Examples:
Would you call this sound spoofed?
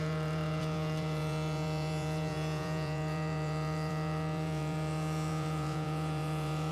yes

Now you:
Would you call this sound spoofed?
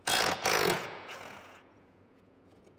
yes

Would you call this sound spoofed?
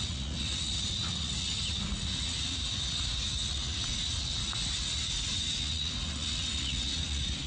yes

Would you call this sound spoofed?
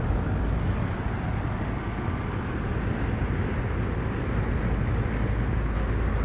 no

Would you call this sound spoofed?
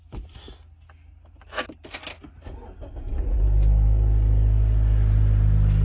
no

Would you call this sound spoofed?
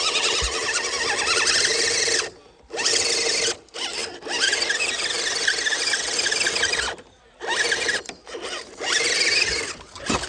no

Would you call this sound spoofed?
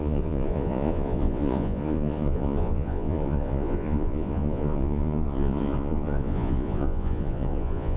yes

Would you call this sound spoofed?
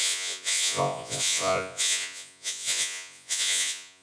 yes